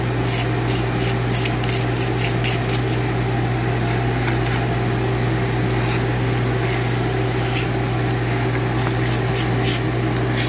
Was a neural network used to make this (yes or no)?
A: no